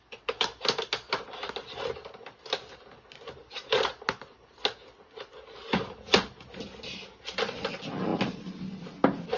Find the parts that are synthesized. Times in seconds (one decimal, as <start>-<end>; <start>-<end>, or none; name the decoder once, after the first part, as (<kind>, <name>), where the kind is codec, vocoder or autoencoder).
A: none